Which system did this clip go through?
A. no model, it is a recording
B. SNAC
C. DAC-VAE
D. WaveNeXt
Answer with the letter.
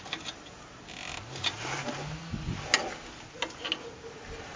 A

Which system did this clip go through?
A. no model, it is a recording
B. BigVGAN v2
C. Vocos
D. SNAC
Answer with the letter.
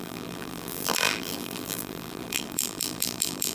B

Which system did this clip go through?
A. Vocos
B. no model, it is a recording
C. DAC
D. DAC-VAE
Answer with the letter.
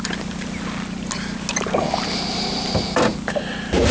B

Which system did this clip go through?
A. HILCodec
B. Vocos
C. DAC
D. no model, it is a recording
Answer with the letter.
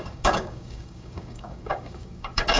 C